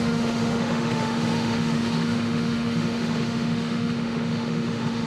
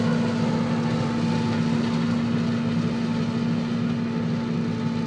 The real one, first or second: second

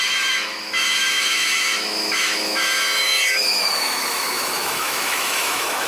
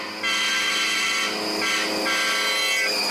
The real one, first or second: second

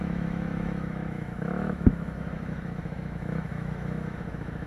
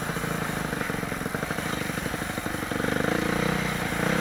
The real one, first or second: second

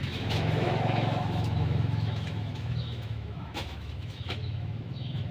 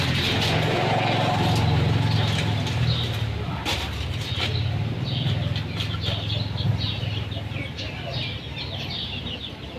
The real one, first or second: second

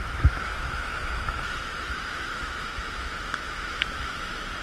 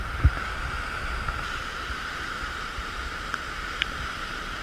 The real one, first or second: second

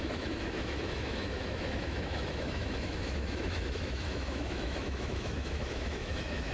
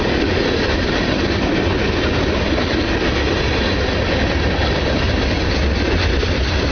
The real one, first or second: second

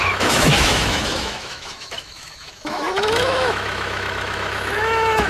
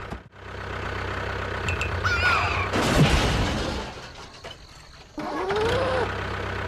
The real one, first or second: second